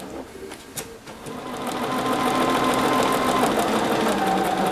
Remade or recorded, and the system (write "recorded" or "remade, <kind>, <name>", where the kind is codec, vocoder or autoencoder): recorded